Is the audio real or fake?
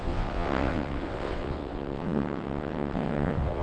fake